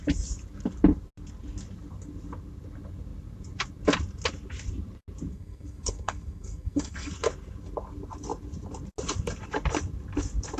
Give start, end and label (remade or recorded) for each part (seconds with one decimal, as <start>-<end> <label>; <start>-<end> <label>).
0.0-5.3 recorded; 5.3-7.1 remade; 7.1-10.6 recorded